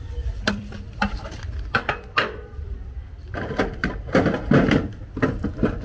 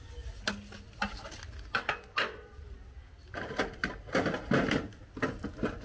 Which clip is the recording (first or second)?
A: second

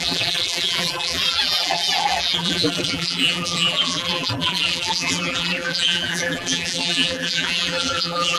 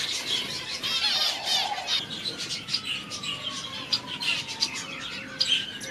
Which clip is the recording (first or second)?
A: second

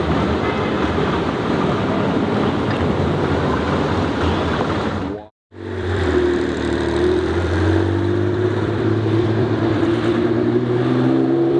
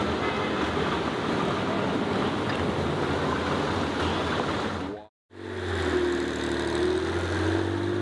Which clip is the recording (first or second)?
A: second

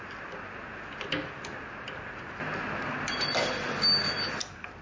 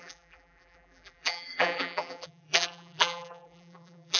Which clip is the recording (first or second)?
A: first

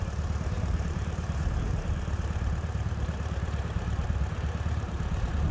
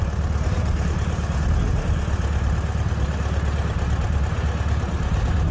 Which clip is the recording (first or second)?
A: second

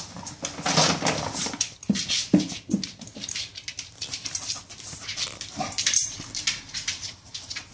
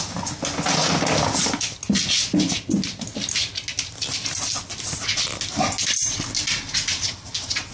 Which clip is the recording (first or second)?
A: second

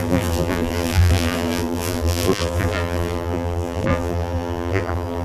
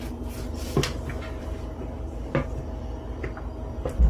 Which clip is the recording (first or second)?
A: second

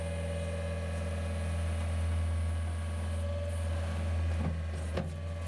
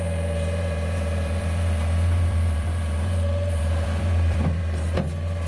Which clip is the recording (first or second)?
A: first